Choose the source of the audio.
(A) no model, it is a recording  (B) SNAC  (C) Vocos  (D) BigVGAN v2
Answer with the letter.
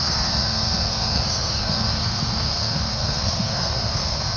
B